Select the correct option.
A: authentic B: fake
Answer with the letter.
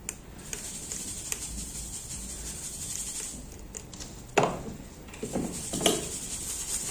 A